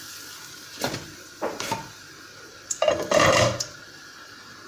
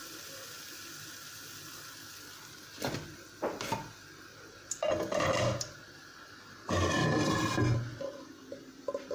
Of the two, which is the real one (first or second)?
second